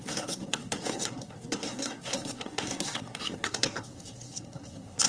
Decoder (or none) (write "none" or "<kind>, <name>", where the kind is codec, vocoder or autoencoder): codec, SNAC